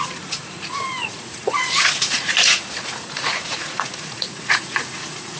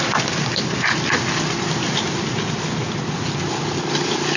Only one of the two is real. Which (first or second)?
second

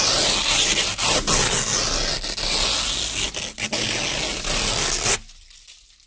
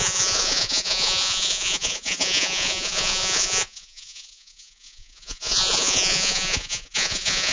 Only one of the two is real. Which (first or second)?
first